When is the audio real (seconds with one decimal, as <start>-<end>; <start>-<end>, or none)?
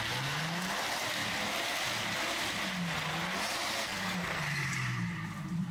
0.0-3.8; 4.4-5.7